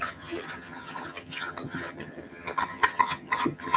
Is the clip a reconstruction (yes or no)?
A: yes